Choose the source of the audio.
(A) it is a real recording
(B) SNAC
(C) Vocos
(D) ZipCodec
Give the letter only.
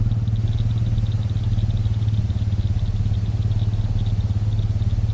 A